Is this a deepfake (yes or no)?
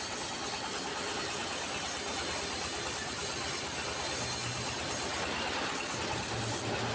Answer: no